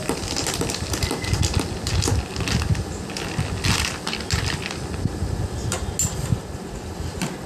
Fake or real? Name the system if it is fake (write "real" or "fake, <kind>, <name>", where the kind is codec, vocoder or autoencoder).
real